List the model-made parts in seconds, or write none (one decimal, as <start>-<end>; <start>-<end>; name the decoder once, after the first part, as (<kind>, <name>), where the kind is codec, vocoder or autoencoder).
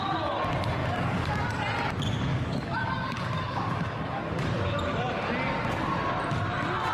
0.8-1.3 (codec, DAC); 2.3-4.4